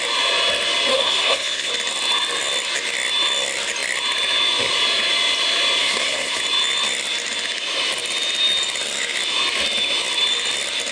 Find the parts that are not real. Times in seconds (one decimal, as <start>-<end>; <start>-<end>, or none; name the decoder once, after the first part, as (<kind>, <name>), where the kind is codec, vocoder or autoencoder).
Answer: 0.9-1.7 (codec, SNAC); 5.8-6.4